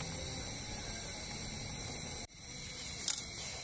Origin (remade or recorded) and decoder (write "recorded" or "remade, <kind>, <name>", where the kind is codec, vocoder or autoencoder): recorded